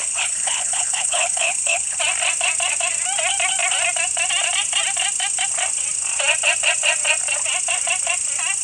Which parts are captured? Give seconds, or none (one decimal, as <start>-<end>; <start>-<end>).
2.0-8.6